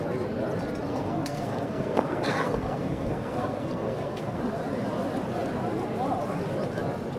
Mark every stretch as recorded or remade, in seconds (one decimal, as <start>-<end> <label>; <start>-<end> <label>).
0.0-0.9 recorded; 0.9-4.4 remade; 4.4-7.2 recorded